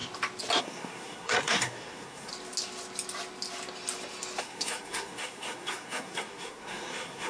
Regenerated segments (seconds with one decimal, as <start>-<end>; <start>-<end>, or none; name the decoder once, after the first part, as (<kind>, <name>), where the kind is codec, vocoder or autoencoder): 0.6-2.3 (codec, SNAC); 4.4-7.3